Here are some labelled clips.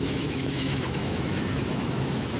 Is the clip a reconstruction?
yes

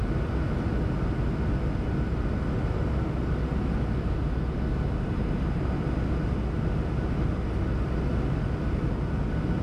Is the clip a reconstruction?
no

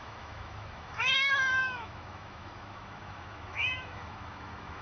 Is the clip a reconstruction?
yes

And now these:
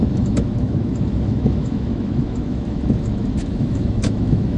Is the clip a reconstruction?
yes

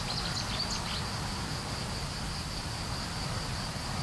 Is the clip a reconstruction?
no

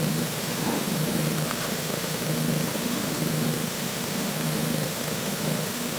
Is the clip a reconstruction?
yes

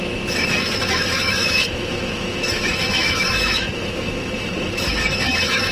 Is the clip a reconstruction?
yes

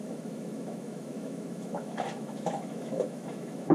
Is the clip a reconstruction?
yes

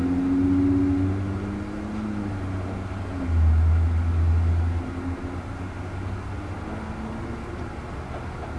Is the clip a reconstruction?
no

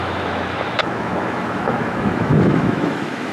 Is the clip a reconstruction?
yes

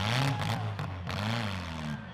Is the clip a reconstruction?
no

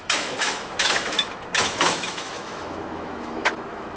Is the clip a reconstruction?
yes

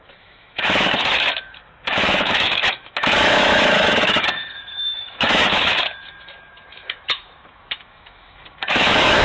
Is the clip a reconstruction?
yes